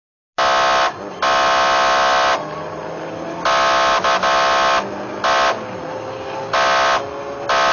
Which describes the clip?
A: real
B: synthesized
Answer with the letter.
A